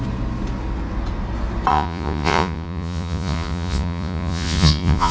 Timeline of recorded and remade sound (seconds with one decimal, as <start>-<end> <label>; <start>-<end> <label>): 0.0-1.7 recorded; 1.7-5.1 remade